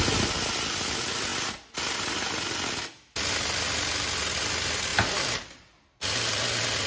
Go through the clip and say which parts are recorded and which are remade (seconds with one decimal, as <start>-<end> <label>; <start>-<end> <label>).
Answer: 0.0-6.9 recorded